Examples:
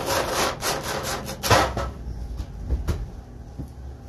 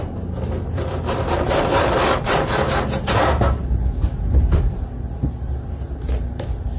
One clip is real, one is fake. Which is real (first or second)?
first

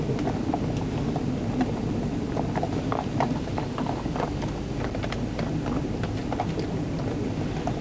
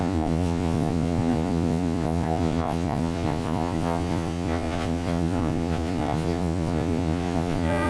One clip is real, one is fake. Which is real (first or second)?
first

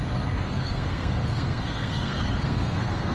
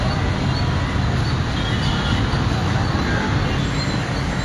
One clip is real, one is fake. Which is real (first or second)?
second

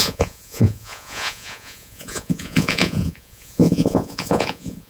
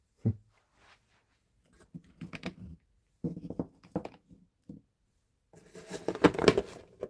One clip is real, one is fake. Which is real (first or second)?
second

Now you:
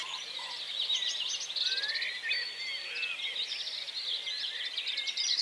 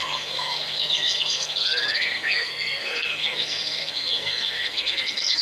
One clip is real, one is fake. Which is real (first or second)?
first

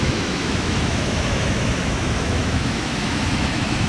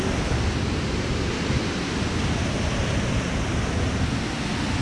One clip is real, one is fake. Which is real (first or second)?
second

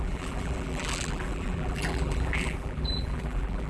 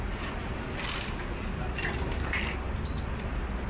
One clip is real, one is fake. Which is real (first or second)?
second